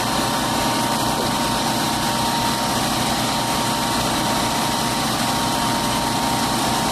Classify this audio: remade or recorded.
remade